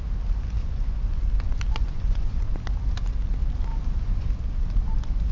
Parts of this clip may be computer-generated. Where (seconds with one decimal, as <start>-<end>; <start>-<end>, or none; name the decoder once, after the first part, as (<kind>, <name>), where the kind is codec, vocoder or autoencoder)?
0.6-1.2 (vocoder, Vocos); 1.8-2.4; 3.7-4.3